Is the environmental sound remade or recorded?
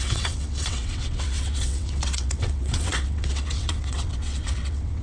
remade